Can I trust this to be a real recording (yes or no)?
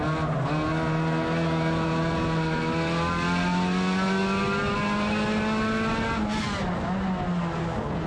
yes